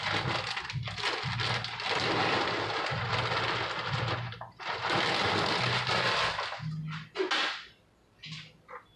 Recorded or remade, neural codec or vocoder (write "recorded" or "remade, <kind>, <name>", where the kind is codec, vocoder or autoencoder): recorded